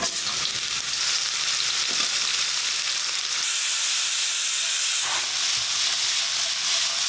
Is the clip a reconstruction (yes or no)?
no